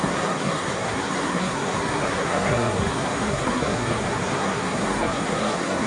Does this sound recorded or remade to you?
remade